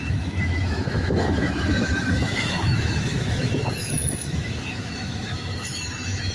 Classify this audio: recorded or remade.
remade